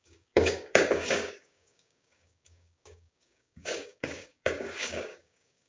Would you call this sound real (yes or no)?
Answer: no